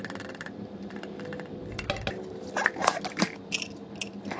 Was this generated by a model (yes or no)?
no